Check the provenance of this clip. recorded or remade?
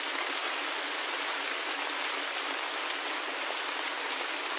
recorded